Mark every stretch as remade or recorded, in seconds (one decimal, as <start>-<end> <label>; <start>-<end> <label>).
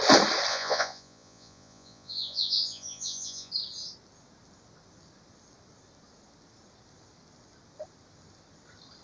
0.0-0.5 recorded; 0.5-3.5 remade; 3.5-9.0 recorded